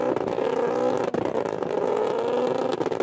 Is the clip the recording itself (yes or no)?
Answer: yes